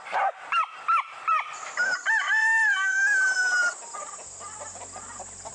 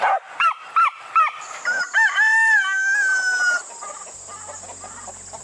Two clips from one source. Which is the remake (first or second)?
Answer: first